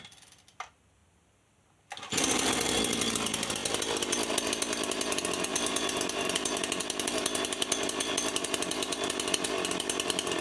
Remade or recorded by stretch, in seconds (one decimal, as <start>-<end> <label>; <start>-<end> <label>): 0.0-10.4 recorded